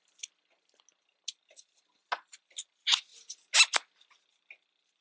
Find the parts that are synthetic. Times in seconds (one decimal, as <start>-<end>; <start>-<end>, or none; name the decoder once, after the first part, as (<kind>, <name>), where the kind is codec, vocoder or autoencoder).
none